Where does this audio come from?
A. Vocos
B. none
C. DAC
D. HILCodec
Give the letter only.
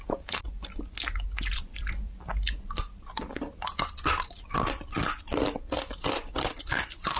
B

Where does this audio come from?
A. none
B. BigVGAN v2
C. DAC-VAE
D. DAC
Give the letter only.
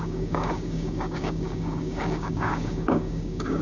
D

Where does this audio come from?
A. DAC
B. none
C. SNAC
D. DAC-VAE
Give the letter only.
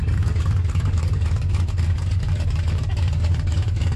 A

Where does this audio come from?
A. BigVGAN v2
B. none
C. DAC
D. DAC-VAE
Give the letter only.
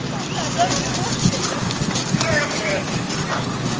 B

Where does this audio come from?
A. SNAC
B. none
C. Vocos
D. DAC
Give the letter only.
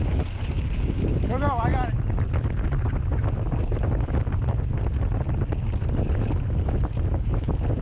B